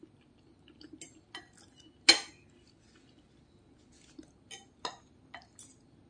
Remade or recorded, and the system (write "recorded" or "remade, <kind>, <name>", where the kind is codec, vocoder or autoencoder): recorded